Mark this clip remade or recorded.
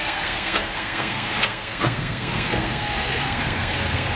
remade